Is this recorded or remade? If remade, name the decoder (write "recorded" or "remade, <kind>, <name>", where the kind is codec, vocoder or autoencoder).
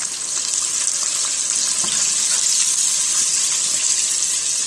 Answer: recorded